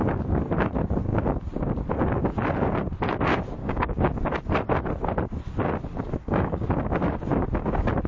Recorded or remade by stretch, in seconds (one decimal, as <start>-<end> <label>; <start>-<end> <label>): 0.0-3.6 recorded; 3.6-4.1 remade; 4.1-6.2 recorded; 6.2-6.8 remade; 6.8-8.1 recorded